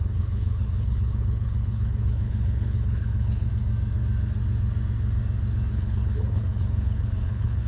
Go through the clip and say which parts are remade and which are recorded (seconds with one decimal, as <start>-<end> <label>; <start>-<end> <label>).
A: 0.0-3.5 remade; 3.5-5.7 recorded; 5.7-7.7 remade